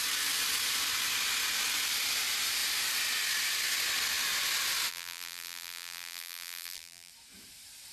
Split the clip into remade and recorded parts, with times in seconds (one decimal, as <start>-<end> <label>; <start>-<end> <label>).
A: 0.0-4.9 recorded; 4.9-7.1 remade; 7.1-7.9 recorded